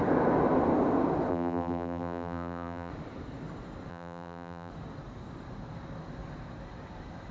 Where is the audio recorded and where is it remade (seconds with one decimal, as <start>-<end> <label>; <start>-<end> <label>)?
0.0-1.3 recorded; 1.3-2.9 remade; 2.9-3.9 recorded; 3.9-4.7 remade; 4.7-7.3 recorded